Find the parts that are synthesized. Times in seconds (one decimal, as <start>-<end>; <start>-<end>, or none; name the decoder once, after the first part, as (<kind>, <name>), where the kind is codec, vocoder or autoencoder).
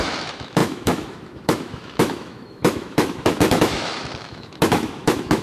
0.0-5.4 (autoencoder, DAC-VAE)